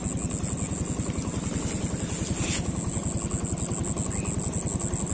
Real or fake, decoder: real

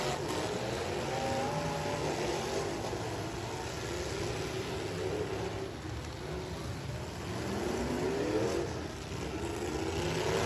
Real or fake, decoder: real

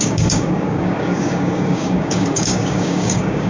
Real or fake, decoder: fake, codec, DAC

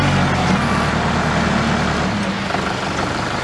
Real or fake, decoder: real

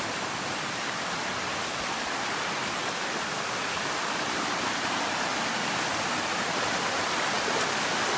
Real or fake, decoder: real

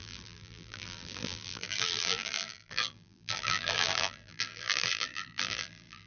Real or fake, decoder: fake, vocoder, BigVGAN v2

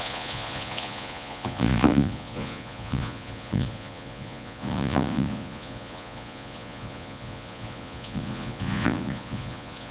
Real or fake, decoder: fake, vocoder, Vocos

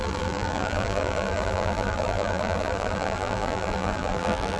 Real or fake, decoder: fake, vocoder, BigVGAN v2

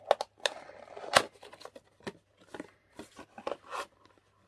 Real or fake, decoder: real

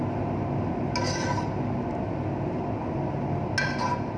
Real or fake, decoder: real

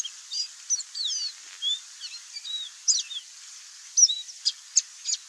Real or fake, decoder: real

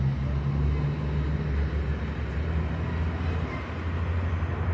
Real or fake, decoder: real